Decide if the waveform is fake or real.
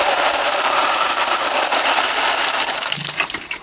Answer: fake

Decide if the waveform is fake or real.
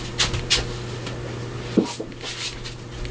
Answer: real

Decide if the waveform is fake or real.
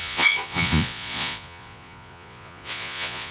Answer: fake